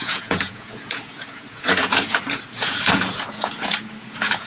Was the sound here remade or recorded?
remade